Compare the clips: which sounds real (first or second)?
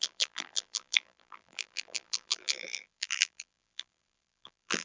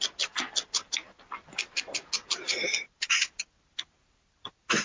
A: second